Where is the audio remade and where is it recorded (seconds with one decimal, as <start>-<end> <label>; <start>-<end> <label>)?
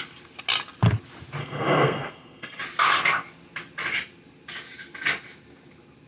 0.0-1.4 recorded; 1.4-2.6 remade; 2.6-6.1 recorded